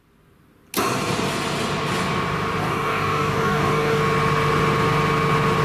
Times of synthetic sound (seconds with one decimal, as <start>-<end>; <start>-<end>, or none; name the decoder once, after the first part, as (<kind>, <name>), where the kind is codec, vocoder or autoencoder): 2.6-4.0 (codec, DAC)